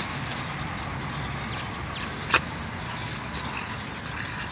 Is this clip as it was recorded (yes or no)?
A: yes